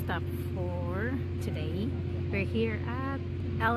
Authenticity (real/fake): real